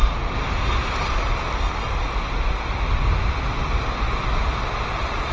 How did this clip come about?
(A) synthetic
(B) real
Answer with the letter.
B